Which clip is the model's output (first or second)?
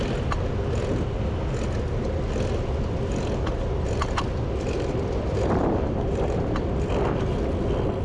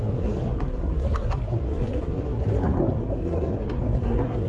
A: second